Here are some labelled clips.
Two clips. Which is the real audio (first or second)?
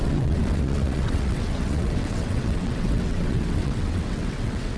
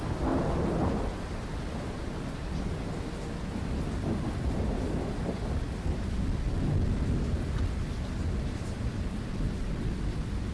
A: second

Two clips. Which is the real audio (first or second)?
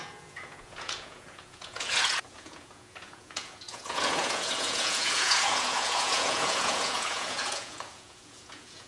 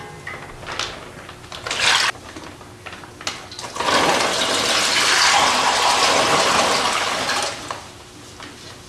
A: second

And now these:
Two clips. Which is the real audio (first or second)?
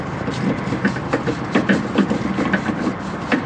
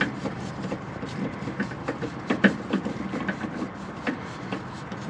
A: first